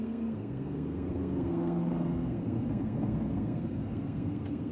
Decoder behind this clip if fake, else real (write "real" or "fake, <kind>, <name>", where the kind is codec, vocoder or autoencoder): fake, codec, SNAC